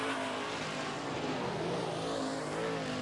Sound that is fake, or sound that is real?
real